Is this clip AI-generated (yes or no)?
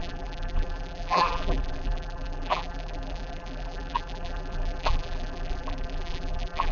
yes